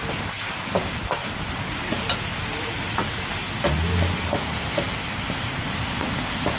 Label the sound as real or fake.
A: real